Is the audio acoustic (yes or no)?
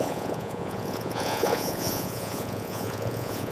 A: no